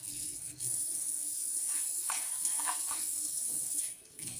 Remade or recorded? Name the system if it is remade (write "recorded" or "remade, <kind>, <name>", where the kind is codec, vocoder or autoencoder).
remade, codec, SNAC